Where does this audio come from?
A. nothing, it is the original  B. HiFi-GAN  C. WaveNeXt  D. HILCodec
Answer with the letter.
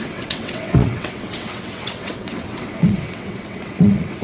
C